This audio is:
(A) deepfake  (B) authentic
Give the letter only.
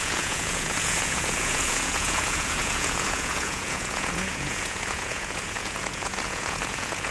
A